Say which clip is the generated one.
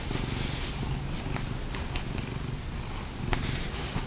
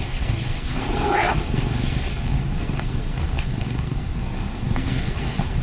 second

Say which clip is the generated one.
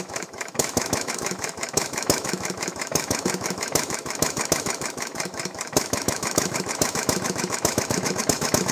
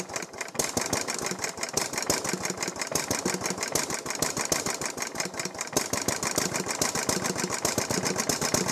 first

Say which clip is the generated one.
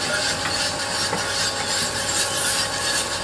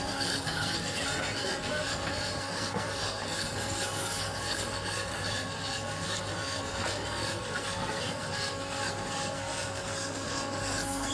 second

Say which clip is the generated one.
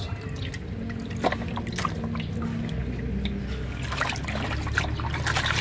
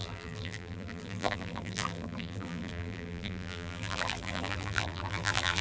second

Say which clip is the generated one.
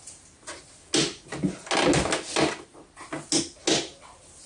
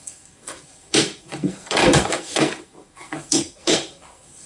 second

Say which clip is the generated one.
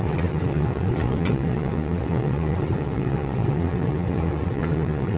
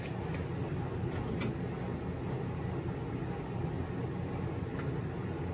first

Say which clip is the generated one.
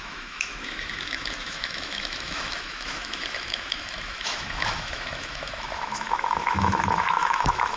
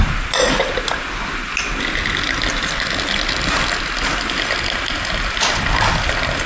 first